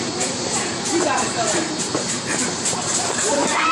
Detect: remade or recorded remade